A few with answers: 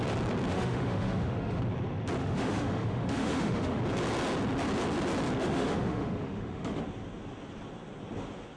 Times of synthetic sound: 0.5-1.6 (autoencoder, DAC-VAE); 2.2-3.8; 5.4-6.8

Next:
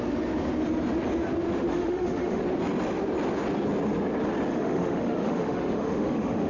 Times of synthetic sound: 1.7-2.4 (autoencoder, DAC-VAE); 4.5-6.5

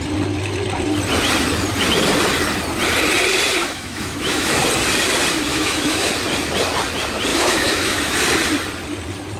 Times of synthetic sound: 3.6-4.6 (autoencoder, DAC-VAE); 5.5-6.1; 7.3-8.2